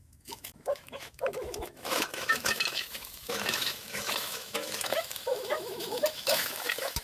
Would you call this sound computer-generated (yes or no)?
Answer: yes